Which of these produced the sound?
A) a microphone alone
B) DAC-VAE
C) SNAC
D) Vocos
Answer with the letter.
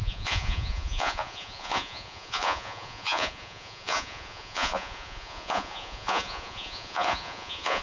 D